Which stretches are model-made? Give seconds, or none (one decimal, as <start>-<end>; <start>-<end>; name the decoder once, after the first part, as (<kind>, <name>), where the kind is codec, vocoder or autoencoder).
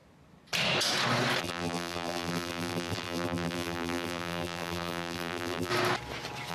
1.4-5.7 (vocoder, BigVGAN v2)